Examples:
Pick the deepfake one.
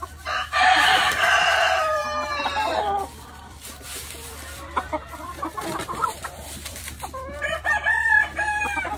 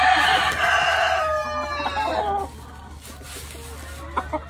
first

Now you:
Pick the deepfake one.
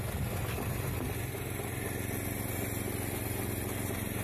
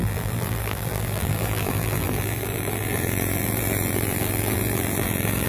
second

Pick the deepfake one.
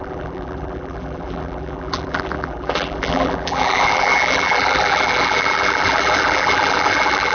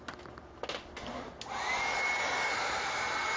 first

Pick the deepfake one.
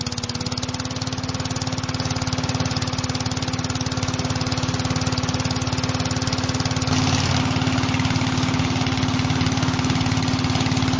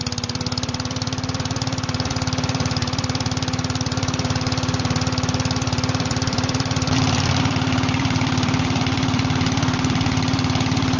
second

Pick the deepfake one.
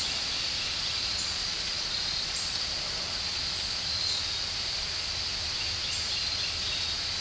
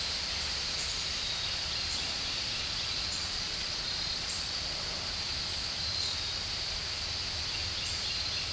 second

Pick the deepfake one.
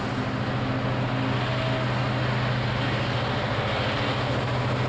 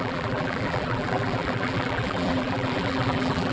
second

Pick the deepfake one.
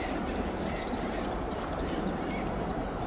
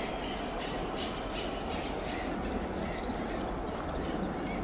first